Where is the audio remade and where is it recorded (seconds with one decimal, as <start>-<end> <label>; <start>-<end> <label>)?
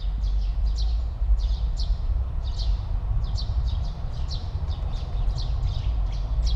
0.0-0.5 recorded; 0.5-3.9 remade; 3.9-4.4 recorded; 4.4-5.1 remade; 5.1-6.6 recorded